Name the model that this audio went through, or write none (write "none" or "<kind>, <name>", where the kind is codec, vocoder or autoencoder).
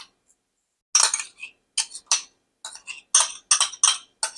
none